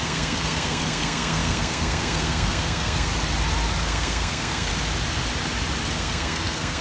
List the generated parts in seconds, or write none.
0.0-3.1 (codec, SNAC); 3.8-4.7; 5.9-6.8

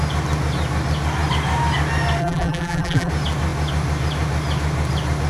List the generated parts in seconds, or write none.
2.2-3.1 (vocoder, BigVGAN v2)

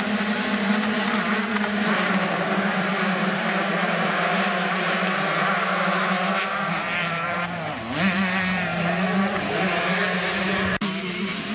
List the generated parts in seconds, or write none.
0.0-11.5 (vocoder, BigVGAN v2)

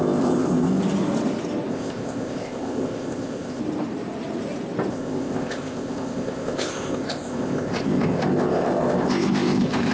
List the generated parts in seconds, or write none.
0.0-0.8 (codec, ZipCodec); 1.7-3.6; 4.9-9.9

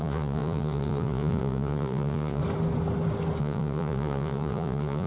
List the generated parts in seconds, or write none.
0.0-2.4 (vocoder, Vocos); 3.4-5.1

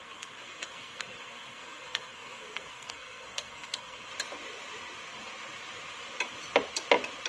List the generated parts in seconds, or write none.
0.0-4.1 (codec, SNAC)